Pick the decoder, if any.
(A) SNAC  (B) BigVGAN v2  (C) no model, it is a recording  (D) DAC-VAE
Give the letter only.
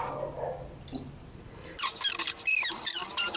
C